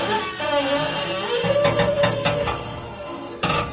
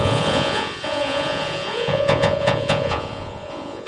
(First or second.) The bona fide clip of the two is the first